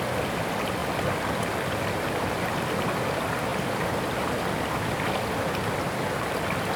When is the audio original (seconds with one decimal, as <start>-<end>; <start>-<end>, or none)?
0.0-0.8; 2.9-6.8